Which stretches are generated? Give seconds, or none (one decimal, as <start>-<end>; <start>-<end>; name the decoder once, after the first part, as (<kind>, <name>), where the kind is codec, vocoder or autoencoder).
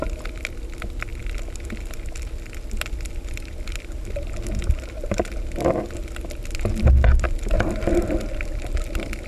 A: none